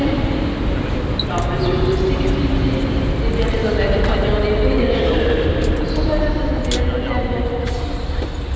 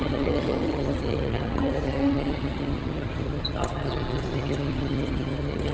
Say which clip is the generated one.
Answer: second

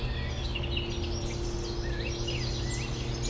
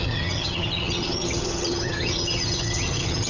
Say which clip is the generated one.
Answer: second